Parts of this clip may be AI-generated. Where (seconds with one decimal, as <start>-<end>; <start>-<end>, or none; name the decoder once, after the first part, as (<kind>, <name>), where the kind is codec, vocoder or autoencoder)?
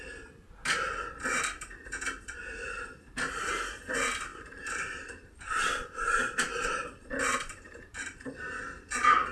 4.3-8.6 (vocoder, BigVGAN v2)